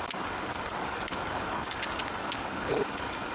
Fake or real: fake